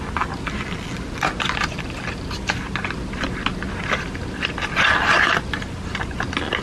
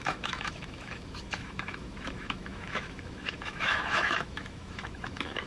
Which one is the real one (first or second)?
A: first